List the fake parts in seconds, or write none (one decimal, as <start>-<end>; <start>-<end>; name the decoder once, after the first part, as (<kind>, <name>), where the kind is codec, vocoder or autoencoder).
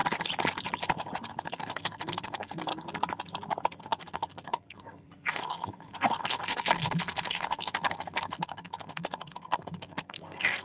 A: 1.5-2.7 (codec, SNAC); 3.8-10.6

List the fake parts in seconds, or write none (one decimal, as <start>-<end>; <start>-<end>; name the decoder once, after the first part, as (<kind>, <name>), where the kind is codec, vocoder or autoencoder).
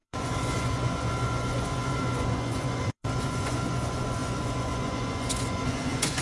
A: 0.0-6.2 (vocoder, Vocos)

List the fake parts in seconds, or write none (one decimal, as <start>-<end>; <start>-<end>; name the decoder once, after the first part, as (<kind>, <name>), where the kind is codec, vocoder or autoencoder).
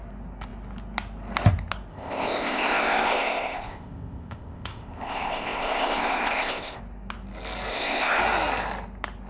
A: 1.9-6.8 (codec, ZipCodec); 7.7-8.2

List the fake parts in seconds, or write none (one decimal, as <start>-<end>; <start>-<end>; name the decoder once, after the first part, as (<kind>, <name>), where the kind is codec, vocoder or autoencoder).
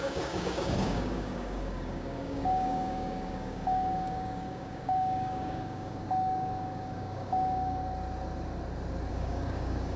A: 0.0-7.8 (codec, DAC); 9.1-10.0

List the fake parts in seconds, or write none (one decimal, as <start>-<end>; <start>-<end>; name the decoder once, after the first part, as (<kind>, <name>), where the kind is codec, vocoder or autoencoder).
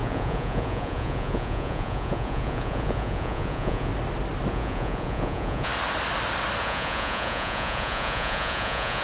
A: 0.0-3.9 (vocoder, Vocos); 4.5-5.7; 6.6-9.0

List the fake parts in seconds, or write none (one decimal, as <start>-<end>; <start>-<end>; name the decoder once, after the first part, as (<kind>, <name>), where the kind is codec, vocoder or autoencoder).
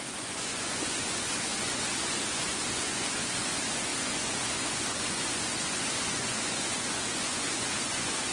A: 0.0-8.3 (vocoder, Vocos)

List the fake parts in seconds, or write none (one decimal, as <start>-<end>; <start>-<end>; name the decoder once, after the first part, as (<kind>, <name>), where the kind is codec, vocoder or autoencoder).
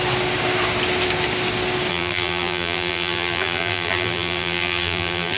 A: 1.9-5.4 (vocoder, BigVGAN v2)